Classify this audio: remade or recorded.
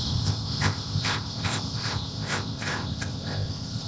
remade